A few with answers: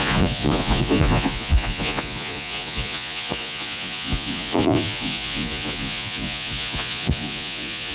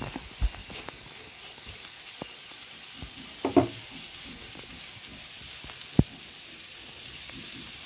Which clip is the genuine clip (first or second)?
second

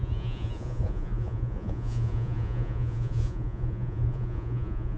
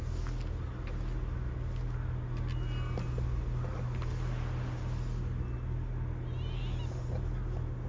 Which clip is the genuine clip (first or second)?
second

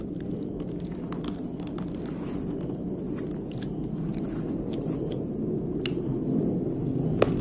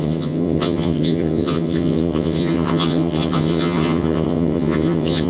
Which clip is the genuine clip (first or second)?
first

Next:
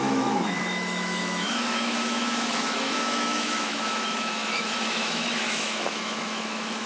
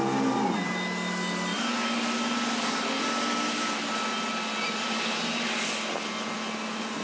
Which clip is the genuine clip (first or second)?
second